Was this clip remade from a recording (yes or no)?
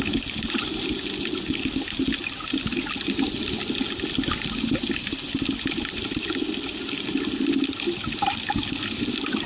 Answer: no